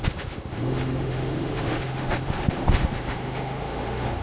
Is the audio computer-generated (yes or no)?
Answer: yes